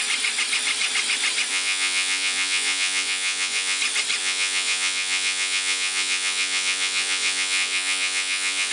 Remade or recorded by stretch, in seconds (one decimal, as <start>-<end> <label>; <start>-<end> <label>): 0.0-1.5 recorded; 1.5-3.8 remade; 3.8-4.2 recorded; 4.2-8.7 remade